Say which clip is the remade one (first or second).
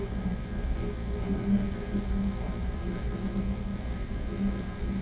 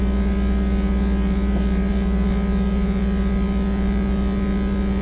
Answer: first